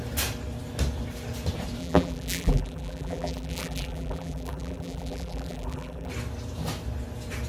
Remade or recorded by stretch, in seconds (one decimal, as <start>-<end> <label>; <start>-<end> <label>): 0.0-1.8 recorded; 1.8-6.1 remade; 6.1-7.5 recorded